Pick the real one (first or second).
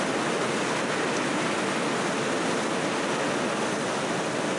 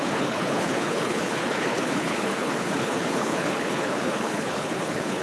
first